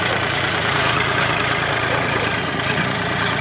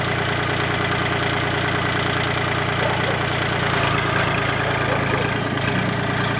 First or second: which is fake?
first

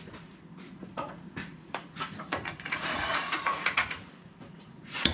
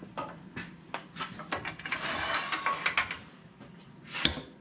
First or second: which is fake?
first